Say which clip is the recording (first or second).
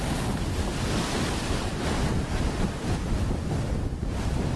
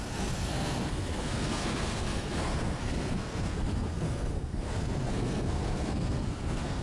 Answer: first